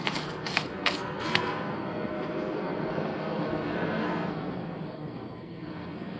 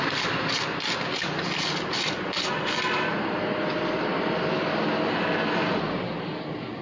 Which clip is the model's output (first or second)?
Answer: first